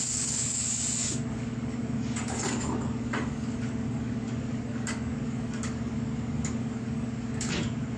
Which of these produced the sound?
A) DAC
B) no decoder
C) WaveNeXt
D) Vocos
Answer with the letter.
A